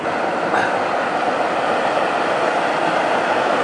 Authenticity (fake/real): real